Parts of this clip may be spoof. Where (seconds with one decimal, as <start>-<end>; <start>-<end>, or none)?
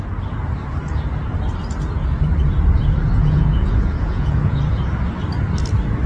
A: 3.2-4.6